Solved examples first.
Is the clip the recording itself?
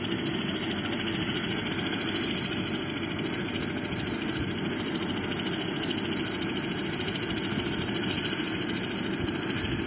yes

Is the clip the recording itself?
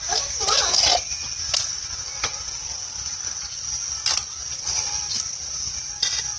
yes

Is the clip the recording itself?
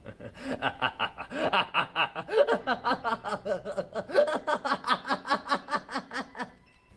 no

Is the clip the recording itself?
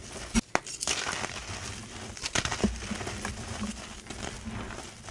yes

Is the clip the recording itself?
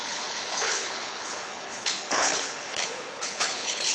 no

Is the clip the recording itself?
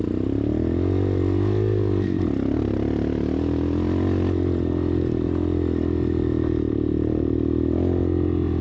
yes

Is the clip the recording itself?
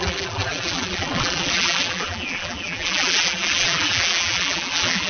no